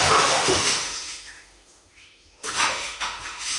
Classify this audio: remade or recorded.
remade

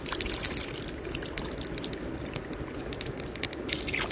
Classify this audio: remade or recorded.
recorded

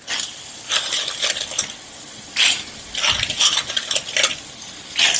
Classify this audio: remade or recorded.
recorded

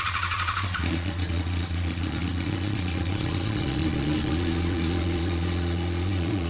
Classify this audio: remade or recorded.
remade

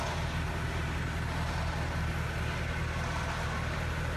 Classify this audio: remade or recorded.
recorded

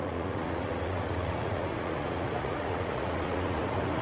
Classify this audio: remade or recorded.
remade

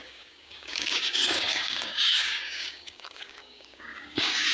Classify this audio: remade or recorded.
remade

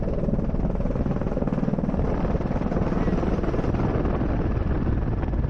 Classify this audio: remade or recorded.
recorded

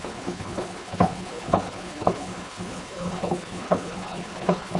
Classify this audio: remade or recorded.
remade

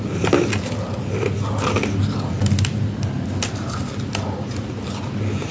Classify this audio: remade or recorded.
recorded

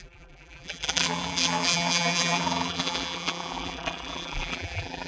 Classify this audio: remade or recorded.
remade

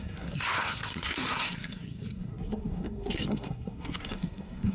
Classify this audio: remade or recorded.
remade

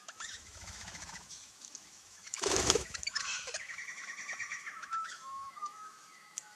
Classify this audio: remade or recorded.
remade